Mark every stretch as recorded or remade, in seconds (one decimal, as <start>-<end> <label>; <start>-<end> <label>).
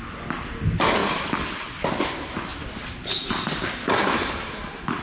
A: 0.0-1.0 recorded; 1.0-2.0 remade; 2.0-2.5 recorded; 2.5-5.0 remade